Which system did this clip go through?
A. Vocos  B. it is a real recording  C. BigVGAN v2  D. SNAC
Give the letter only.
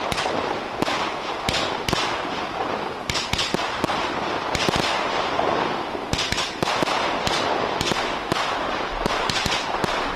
B